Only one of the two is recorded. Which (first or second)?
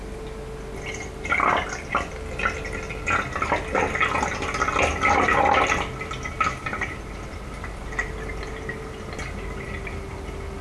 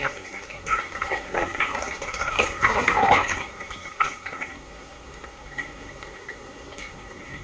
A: first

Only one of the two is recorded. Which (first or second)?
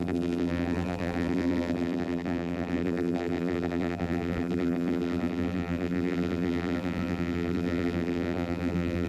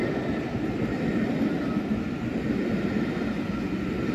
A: second